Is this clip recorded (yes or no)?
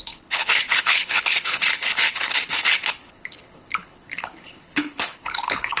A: no